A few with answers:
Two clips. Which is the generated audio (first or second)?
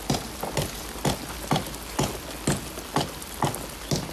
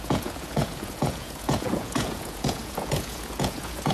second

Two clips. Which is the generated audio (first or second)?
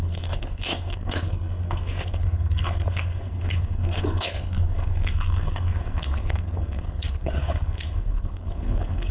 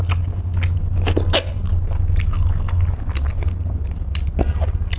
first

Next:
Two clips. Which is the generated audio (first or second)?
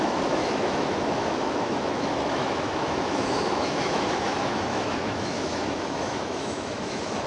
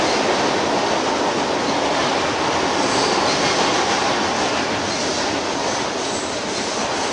first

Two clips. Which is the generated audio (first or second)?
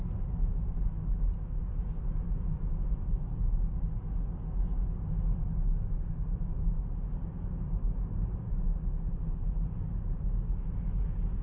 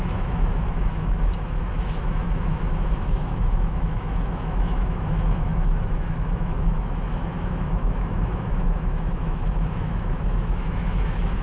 second